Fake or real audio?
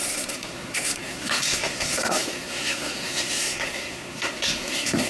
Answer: fake